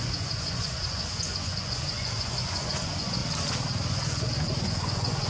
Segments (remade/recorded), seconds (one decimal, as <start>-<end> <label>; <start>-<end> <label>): 0.0-3.2 remade; 3.2-3.9 recorded; 3.9-5.3 remade